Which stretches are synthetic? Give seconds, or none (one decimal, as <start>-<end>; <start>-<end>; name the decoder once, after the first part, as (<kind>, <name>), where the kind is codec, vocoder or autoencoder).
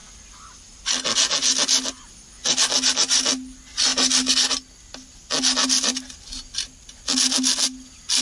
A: none